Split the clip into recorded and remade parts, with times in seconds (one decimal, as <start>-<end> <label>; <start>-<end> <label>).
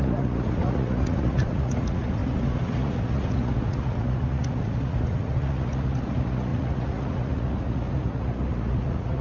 0.0-9.2 remade